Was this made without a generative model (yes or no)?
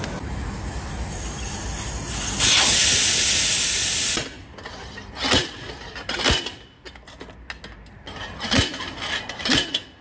yes